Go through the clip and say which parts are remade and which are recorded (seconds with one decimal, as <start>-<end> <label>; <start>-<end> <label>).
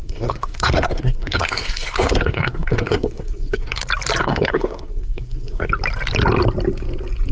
0.0-3.8 remade; 3.8-4.2 recorded; 4.2-5.7 remade; 5.7-7.3 recorded